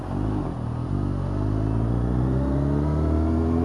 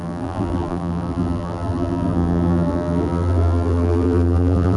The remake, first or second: second